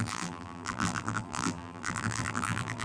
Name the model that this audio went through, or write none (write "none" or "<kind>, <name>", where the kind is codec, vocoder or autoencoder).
vocoder, BigVGAN v2